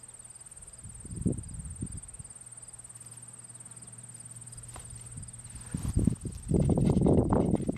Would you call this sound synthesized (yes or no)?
no